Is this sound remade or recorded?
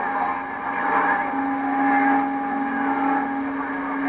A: recorded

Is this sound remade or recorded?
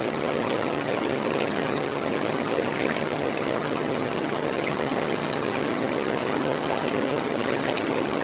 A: remade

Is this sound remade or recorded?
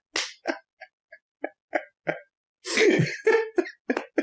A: recorded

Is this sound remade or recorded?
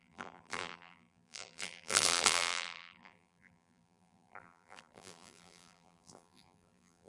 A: remade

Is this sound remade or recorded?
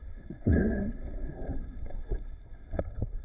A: remade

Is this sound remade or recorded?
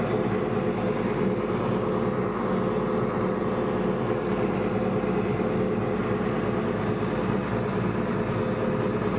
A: recorded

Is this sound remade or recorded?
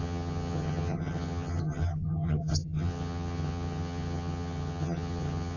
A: remade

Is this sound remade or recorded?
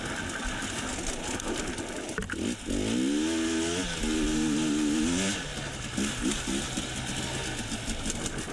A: recorded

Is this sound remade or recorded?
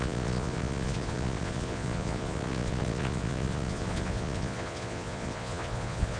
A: remade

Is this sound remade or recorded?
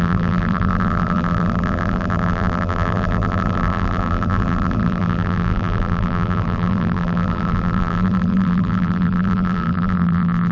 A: remade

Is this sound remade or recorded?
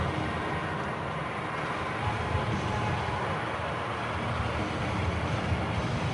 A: recorded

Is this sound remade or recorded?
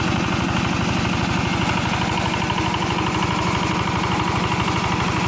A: recorded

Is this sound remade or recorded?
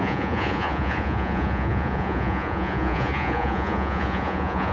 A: remade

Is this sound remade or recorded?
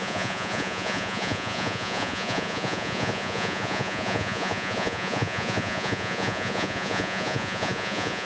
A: remade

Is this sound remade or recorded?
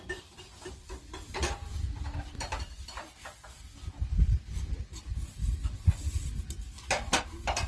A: recorded